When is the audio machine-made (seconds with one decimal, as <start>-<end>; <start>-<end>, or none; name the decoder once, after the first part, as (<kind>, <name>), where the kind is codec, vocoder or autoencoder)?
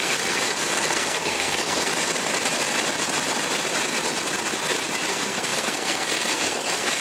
0.0-1.9 (codec, SNAC); 5.1-7.0